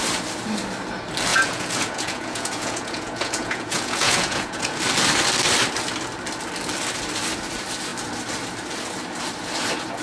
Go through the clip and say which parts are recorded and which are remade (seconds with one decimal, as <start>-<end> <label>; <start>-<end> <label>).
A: 0.0-1.3 recorded; 1.3-4.8 remade; 4.8-10.0 recorded